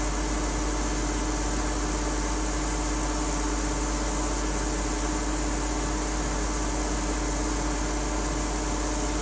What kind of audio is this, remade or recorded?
recorded